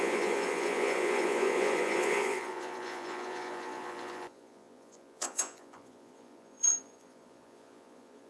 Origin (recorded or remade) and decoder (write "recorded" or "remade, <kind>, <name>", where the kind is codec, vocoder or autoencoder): remade, vocoder, Vocos